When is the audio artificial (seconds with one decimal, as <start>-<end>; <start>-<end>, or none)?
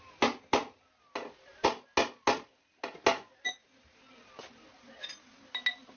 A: none